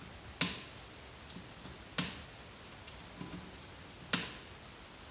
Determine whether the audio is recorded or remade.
recorded